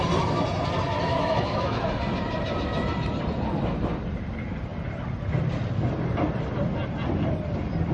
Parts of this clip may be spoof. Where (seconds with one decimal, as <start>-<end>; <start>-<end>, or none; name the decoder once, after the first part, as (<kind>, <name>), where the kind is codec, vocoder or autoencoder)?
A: 1.1-1.9 (autoencoder, DAC-VAE)